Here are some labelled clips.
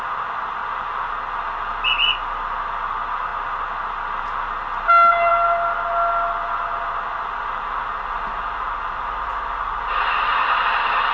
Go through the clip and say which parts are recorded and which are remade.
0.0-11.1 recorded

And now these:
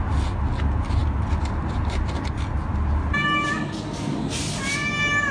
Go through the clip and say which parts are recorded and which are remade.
0.0-5.3 recorded

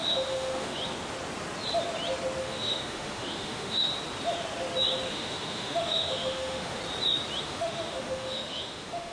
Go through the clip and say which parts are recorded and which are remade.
0.0-0.8 remade; 0.8-2.4 recorded; 2.4-3.9 remade; 3.9-5.1 recorded; 5.1-6.8 remade; 6.8-7.4 recorded; 7.4-9.1 remade

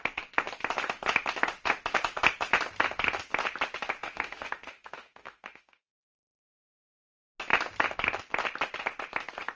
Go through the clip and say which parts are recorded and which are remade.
0.0-4.0 recorded; 4.0-6.4 remade; 6.4-9.6 recorded

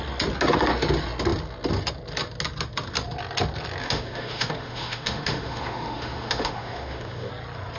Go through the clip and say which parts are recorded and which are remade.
0.0-3.8 recorded; 3.8-7.3 remade; 7.3-7.8 recorded

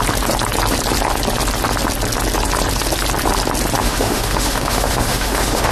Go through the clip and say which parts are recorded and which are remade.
0.0-3.8 recorded; 3.8-5.7 remade

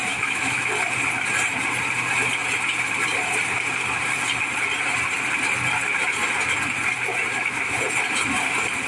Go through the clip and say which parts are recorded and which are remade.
0.0-0.7 remade; 0.7-7.3 recorded; 7.3-7.8 remade; 7.8-8.9 recorded